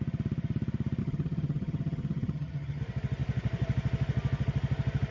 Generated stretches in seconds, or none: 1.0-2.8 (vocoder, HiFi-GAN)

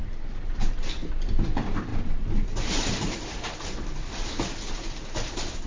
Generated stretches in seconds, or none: none

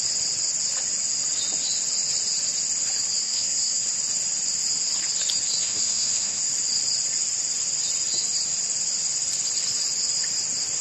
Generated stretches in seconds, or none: 3.2-3.9 (codec, SNAC); 5.6-6.4

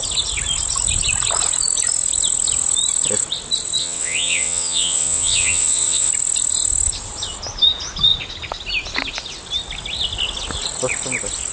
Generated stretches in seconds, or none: 3.8-6.1 (vocoder, WaveNeXt)

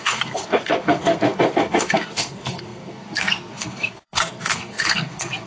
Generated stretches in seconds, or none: 0.0-5.5 (codec, SNAC)

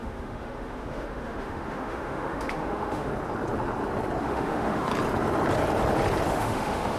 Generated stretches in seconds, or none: 0.0-3.1 (autoencoder, DAC-VAE); 4.2-4.9; 6.3-7.0

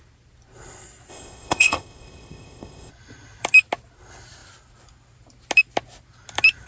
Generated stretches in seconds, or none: 1.1-2.9 (codec, ZipCodec)

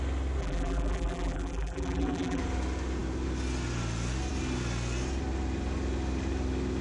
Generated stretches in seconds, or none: 0.4-2.4 (vocoder, BigVGAN v2)